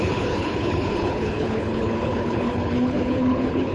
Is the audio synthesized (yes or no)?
yes